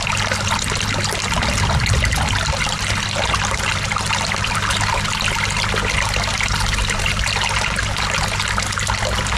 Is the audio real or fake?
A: real